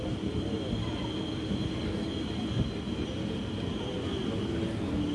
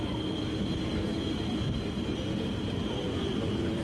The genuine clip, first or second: first